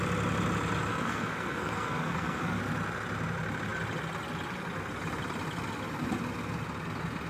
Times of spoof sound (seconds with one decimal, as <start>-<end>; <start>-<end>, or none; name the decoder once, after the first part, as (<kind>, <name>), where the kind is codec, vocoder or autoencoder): 0.9-2.6 (codec, SNAC)

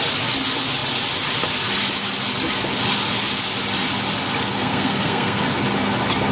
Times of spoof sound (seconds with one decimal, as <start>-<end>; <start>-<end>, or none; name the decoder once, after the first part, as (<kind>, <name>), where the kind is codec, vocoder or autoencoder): 4.5-5.4 (codec, SNAC)

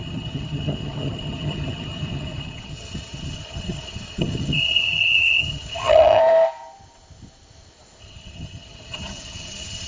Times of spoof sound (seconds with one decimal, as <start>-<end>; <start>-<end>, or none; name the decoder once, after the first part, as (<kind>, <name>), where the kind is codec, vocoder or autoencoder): 0.0-6.2 (vocoder, HiFi-GAN); 8.0-9.9

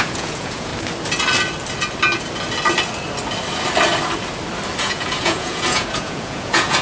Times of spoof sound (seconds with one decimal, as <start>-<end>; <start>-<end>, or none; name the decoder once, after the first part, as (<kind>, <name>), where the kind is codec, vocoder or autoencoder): 0.0-0.7 (vocoder, Vocos); 4.8-6.8

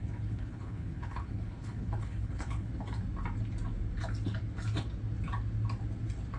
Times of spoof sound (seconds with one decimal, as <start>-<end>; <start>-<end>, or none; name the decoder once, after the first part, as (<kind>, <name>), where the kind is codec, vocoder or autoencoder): 0.0-2.7 (codec, HILCodec)